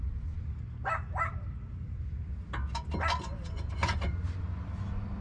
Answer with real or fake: real